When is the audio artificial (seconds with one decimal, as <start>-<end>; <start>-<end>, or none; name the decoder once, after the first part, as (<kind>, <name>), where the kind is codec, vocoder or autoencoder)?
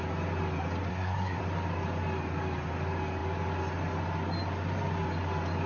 0.9-1.4 (codec, SNAC)